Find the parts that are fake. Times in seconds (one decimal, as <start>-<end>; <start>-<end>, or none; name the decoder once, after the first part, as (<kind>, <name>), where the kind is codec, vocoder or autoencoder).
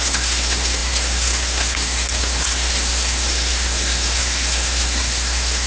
0.0-5.7 (codec, SNAC)